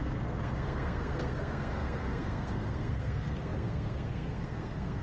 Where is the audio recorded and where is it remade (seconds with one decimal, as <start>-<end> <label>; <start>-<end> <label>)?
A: 0.0-5.0 remade